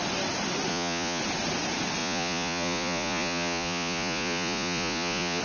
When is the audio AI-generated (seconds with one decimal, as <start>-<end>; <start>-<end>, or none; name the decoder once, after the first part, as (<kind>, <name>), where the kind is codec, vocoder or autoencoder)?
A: 0.7-1.2 (vocoder, Vocos); 2.0-5.4